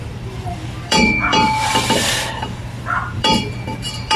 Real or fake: fake